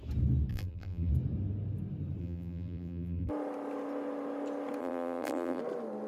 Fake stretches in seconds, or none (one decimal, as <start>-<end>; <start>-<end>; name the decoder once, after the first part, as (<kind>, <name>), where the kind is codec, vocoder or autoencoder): 0.5-1.1 (vocoder, BigVGAN v2); 2.2-3.3; 4.8-5.6